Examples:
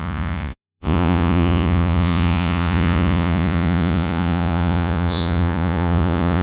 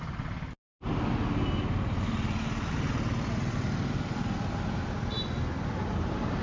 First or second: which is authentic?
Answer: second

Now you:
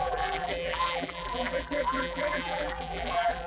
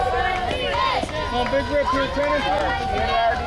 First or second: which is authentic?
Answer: second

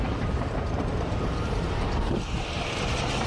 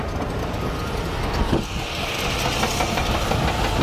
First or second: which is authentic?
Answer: second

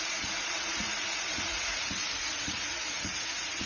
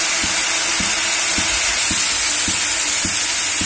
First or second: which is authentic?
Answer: second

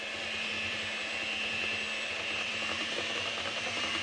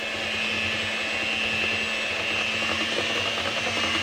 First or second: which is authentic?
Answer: second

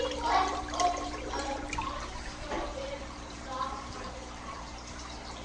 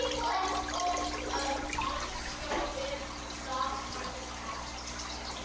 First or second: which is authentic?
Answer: second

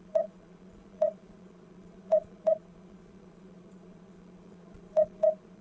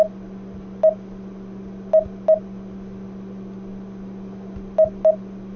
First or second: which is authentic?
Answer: second